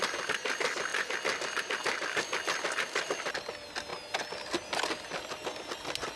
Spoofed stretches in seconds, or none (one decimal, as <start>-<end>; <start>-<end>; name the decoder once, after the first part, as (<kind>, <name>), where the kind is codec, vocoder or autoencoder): none